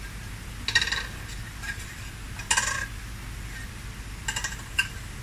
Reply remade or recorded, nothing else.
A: recorded